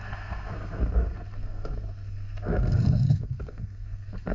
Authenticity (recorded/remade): remade